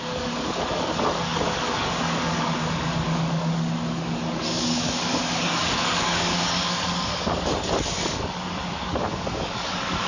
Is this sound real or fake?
fake